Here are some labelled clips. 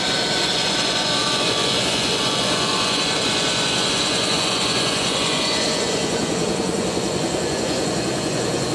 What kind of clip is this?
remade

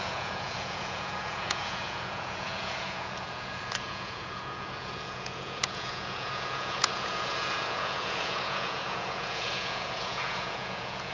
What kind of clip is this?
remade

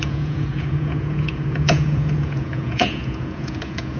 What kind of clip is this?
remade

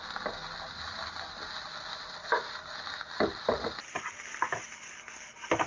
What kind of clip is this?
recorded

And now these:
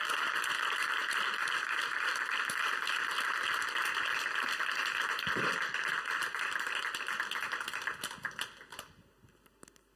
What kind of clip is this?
recorded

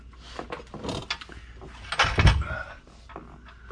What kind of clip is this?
recorded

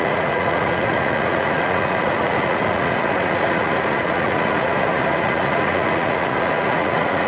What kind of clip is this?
remade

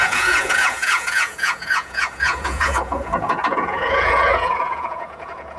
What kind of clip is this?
remade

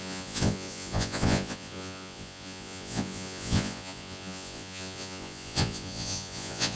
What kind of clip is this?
remade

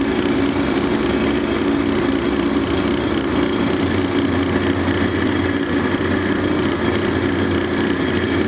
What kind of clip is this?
recorded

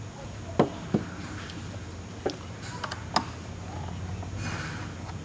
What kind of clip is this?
recorded